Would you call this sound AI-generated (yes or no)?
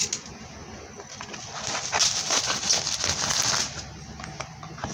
no